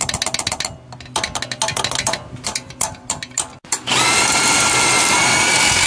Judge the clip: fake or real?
real